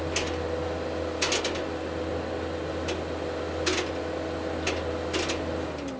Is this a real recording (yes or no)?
yes